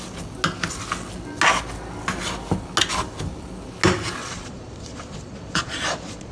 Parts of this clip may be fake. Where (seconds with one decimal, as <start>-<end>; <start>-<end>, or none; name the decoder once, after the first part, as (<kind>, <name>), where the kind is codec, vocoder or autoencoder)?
4.2-6.3 (vocoder, Vocos)